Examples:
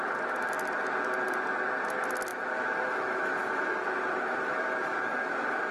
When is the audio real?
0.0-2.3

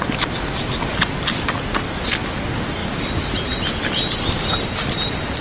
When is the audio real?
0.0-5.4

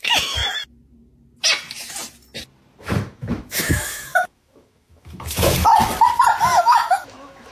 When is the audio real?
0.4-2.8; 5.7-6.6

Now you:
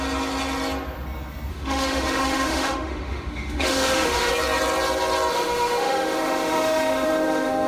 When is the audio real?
0.0-1.5; 4.3-5.3